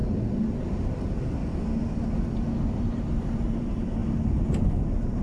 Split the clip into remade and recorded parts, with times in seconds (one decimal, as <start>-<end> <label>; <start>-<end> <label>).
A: 0.0-0.6 recorded; 0.6-1.4 remade; 1.4-2.8 recorded; 2.8-4.0 remade; 4.0-4.6 recorded; 4.6-5.2 remade